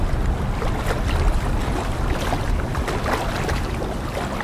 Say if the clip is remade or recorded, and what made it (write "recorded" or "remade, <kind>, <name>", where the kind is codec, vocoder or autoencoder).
recorded